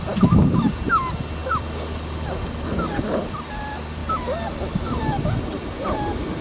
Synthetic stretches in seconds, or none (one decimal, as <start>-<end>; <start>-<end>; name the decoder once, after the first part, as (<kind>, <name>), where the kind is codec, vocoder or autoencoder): 4.0-5.0 (vocoder, BigVGAN v2)